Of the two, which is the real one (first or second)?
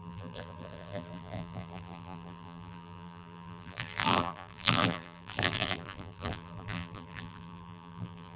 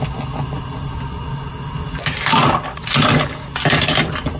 second